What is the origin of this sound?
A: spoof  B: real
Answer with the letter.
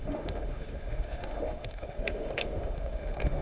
A